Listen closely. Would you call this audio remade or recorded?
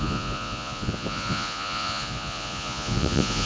remade